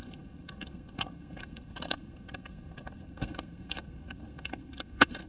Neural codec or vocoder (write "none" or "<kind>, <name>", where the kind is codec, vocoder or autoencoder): codec, SNAC